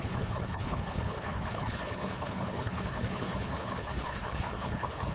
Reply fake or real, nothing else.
fake